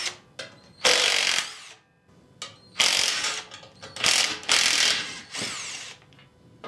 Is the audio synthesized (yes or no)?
no